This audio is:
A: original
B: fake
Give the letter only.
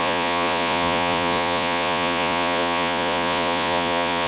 B